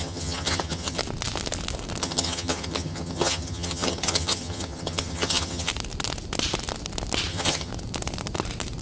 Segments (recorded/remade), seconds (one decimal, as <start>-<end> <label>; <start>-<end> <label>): 0.0-1.0 remade; 1.0-2.0 recorded; 2.0-5.7 remade; 5.7-7.3 recorded; 7.3-7.7 remade; 7.7-8.8 recorded